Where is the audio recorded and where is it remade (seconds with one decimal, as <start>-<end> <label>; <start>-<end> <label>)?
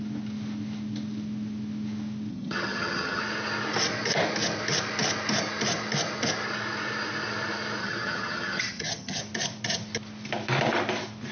0.0-2.3 recorded; 2.3-3.2 remade; 3.2-7.8 recorded; 7.8-9.2 remade; 9.2-11.3 recorded